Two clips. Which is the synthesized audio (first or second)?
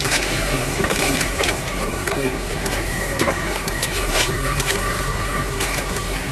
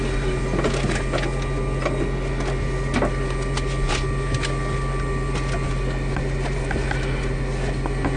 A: first